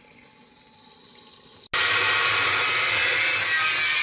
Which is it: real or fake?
real